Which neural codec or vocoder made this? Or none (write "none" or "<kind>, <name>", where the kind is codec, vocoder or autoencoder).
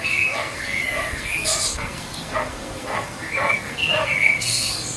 codec, SNAC